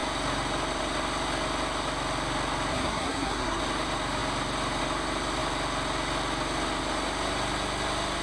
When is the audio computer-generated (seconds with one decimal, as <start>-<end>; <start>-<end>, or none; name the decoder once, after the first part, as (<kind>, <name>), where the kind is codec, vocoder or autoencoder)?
2.7-3.6 (codec, SNAC)